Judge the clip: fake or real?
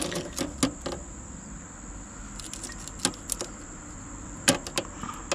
real